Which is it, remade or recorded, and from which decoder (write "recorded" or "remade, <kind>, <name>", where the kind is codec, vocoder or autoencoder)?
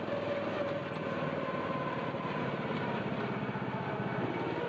recorded